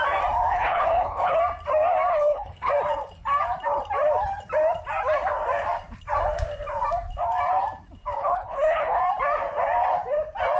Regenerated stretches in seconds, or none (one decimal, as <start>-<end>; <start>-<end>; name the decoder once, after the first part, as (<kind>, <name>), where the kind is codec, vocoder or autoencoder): 0.5-1.4 (codec, HILCodec); 2.1-2.7; 8.2-9.0